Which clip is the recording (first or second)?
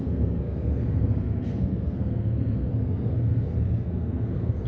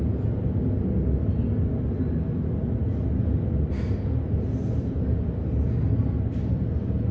second